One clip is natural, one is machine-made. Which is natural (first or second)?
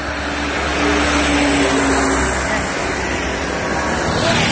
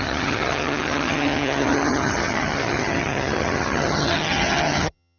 first